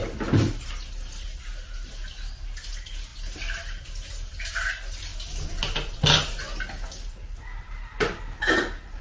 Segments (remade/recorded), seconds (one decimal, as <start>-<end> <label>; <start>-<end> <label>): 0.0-9.0 recorded